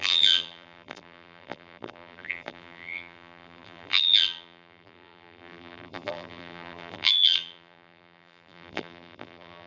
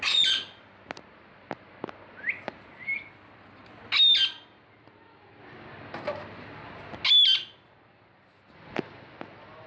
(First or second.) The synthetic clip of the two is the first